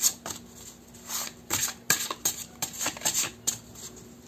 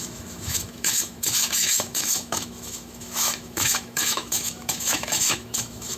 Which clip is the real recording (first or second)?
first